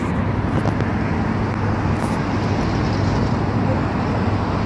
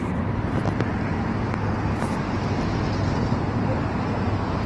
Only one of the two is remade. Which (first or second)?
second